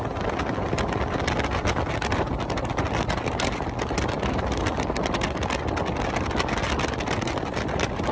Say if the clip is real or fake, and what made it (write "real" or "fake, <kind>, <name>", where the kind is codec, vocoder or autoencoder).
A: real